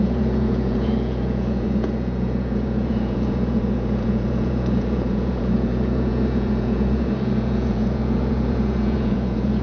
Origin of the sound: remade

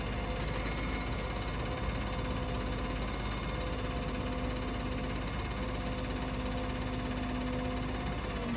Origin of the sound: recorded